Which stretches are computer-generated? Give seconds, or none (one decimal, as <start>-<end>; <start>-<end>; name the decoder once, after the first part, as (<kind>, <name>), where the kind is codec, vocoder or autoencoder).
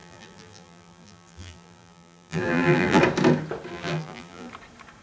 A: 0.0-3.0 (vocoder, BigVGAN v2); 3.7-4.5